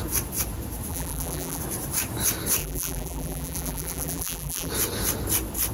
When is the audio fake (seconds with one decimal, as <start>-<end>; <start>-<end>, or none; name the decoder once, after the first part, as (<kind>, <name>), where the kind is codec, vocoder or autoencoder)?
0.9-1.6 (vocoder, BigVGAN v2); 2.6-4.7